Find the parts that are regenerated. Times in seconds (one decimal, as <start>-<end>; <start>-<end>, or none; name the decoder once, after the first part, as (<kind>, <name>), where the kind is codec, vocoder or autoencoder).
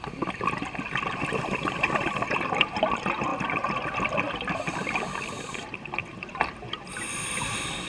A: none